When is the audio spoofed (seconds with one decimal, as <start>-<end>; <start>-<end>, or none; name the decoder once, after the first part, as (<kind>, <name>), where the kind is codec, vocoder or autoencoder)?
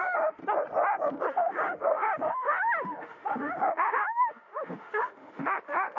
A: 0.0-0.4 (autoencoder, DAC-VAE); 1.3-6.0